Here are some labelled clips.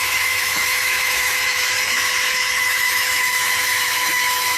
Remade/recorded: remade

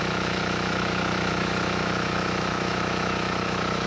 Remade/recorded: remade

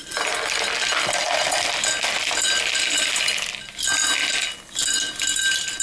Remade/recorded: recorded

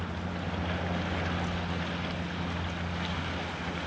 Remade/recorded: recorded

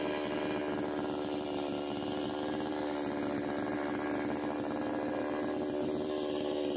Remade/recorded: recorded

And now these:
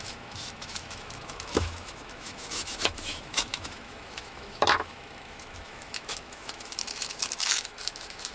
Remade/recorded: remade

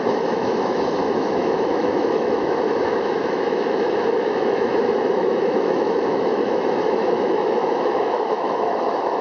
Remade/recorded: remade